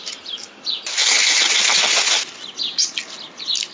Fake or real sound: real